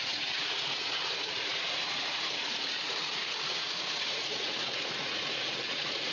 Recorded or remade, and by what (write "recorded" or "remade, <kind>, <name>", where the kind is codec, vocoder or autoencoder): remade, vocoder, Vocos